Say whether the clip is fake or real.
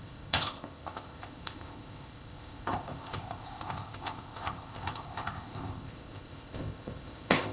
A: fake